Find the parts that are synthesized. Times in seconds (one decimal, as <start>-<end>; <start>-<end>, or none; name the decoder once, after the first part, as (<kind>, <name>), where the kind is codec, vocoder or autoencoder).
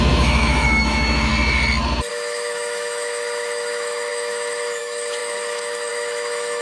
0.0-1.3 (autoencoder, DAC-VAE); 2.1-6.6